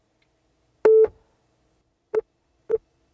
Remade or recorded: recorded